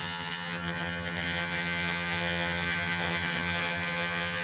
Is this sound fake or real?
fake